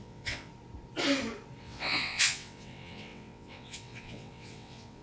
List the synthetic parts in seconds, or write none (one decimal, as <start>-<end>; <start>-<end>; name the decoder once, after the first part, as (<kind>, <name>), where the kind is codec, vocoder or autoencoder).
0.0-0.5 (vocoder, WaveNeXt); 1.6-5.0